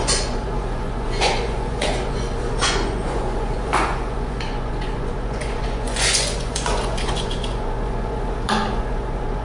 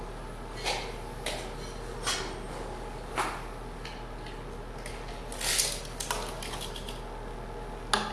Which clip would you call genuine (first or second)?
second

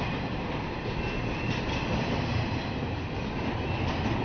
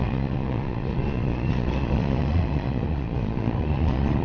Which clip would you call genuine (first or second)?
first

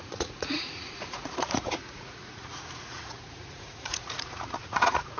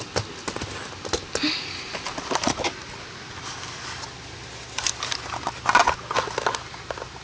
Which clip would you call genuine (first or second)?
second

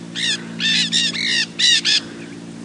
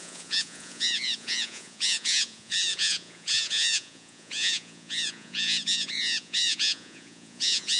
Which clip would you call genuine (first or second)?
first